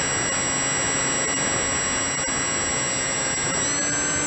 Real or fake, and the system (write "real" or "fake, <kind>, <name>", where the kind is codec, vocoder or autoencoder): real